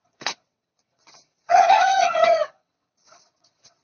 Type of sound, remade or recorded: remade